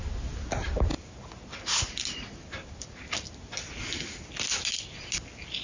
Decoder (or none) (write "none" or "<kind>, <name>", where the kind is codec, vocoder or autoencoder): none